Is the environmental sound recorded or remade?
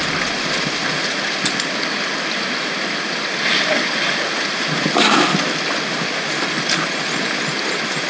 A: recorded